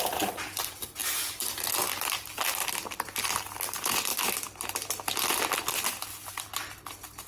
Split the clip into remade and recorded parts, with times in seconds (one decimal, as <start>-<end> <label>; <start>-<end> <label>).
0.0-7.3 recorded